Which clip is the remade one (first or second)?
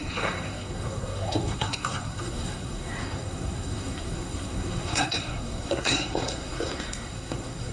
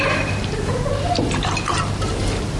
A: first